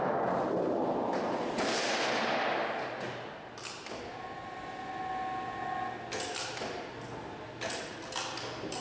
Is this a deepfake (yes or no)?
no